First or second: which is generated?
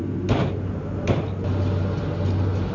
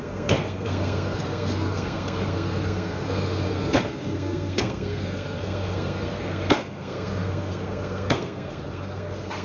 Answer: second